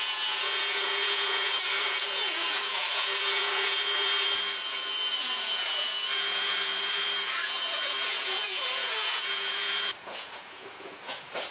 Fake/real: fake